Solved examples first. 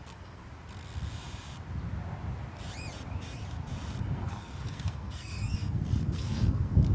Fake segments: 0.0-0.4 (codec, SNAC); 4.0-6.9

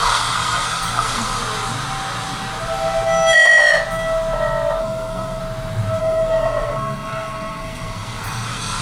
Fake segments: 0.0-1.4 (codec, SNAC); 4.8-5.4; 6.0-8.8

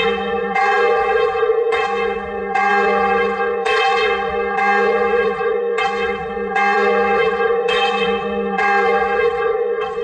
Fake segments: 0.0-10.0 (vocoder, Vocos)

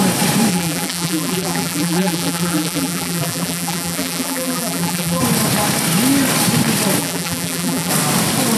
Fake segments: 0.5-5.2 (vocoder, BigVGAN v2); 7.0-7.9

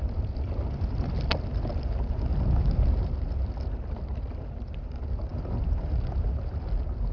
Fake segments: none

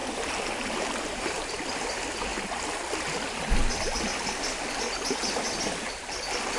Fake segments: 0.0-1.7 (vocoder, BigVGAN v2)

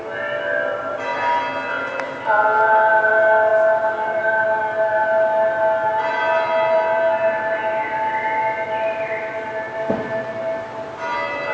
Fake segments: none

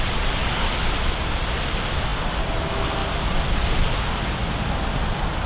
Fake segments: none